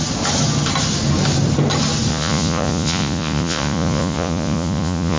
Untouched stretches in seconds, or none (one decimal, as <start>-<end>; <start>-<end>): 0.0-2.1